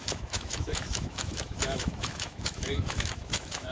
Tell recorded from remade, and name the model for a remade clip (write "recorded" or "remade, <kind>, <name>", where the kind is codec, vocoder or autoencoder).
remade, autoencoder, DAC-VAE